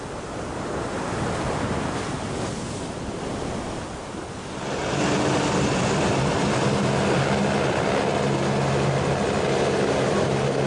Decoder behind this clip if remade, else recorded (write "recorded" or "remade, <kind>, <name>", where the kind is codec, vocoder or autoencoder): recorded